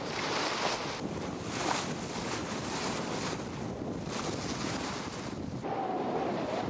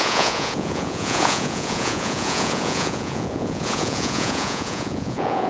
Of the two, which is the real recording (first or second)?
first